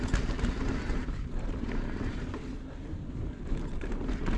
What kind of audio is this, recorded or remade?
recorded